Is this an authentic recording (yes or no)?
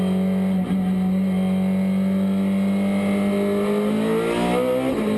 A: yes